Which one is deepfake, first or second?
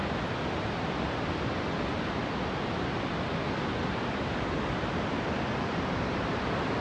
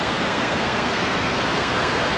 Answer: second